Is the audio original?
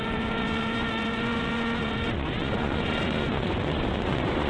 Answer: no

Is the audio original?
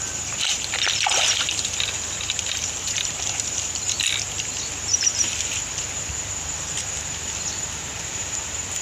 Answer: yes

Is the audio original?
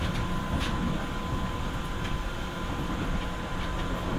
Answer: yes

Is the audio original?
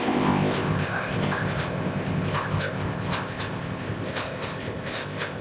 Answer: no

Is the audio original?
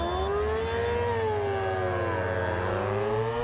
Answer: yes